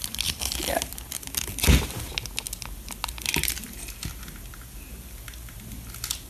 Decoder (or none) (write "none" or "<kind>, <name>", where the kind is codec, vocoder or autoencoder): none